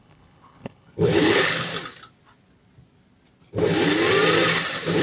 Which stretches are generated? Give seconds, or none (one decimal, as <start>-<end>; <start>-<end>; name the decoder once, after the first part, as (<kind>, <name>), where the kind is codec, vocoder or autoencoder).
0.0-1.7 (codec, HILCodec)